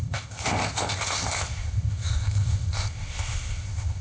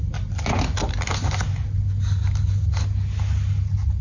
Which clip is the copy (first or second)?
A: first